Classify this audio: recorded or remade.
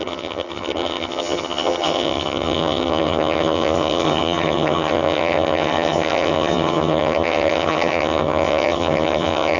remade